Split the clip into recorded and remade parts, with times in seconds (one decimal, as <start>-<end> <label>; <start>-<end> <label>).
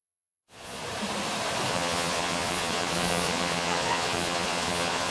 0.0-0.8 remade; 0.8-1.7 recorded; 1.7-5.1 remade